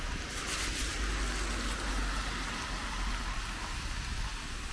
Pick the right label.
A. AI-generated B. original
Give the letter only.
B